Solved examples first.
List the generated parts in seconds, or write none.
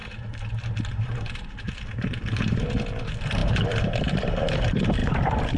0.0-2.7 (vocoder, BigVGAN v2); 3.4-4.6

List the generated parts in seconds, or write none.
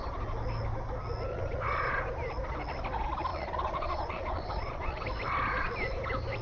1.3-2.0 (vocoder, Vocos); 3.3-5.0